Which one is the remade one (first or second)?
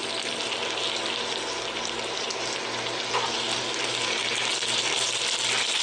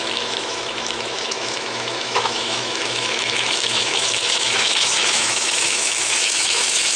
second